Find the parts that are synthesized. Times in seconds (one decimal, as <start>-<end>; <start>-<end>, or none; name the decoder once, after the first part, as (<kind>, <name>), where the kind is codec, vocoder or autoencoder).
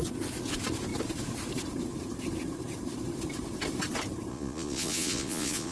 4.3-5.7 (vocoder, Vocos)